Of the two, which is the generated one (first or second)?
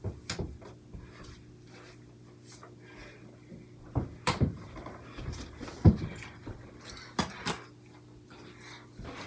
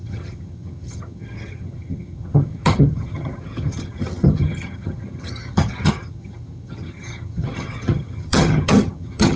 second